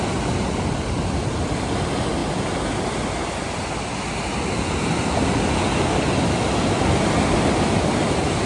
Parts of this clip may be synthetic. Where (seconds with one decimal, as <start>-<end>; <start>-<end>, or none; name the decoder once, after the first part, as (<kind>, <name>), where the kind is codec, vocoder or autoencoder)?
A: none